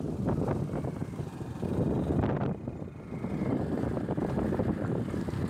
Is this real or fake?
real